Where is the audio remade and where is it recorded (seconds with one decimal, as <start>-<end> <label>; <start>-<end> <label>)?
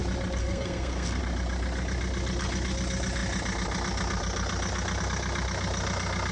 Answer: 0.0-0.4 recorded; 0.4-1.2 remade; 1.2-6.3 recorded